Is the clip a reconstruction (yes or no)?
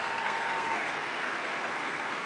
yes